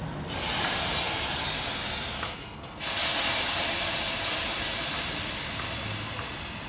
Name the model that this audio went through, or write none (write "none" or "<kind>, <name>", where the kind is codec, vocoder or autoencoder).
none